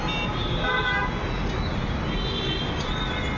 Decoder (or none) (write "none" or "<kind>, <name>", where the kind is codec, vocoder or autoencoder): none